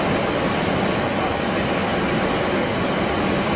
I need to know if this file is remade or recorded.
recorded